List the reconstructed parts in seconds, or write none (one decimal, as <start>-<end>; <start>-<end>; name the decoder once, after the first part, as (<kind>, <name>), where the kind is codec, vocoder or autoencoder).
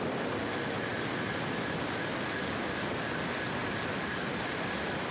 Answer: none